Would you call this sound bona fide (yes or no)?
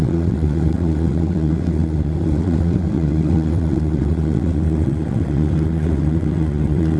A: no